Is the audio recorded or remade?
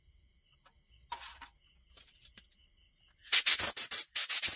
recorded